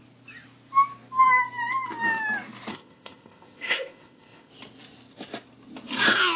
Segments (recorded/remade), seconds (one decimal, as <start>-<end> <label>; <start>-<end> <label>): 0.0-2.7 recorded; 2.7-4.5 remade; 4.5-6.4 recorded